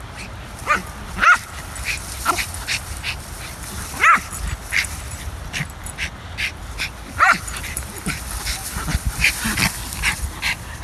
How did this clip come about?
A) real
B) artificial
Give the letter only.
A